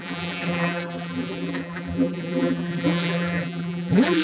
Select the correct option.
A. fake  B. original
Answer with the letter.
A